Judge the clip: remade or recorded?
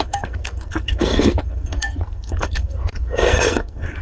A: remade